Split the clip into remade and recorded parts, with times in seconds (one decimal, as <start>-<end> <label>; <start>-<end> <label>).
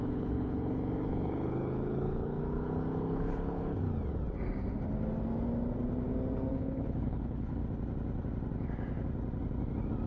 0.0-3.8 remade; 3.8-6.6 recorded; 6.6-7.6 remade; 7.6-10.1 recorded